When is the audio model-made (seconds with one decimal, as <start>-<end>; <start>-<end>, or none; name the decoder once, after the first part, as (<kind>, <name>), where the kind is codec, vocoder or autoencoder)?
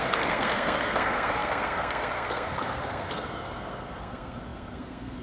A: 0.0-5.2 (codec, SNAC)